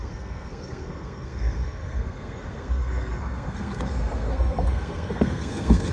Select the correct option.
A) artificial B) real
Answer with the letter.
A